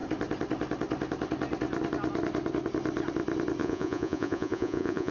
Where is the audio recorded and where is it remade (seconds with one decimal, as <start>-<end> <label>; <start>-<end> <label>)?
0.0-3.6 recorded; 3.6-5.1 remade